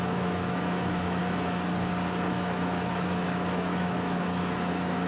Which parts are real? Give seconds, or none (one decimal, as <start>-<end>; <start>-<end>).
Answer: 1.2-2.3